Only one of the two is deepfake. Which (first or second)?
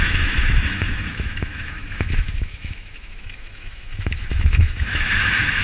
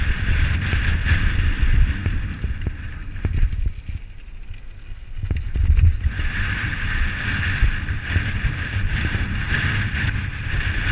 first